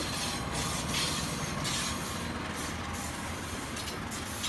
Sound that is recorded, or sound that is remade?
recorded